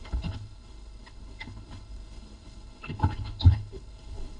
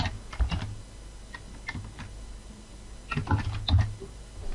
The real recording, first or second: second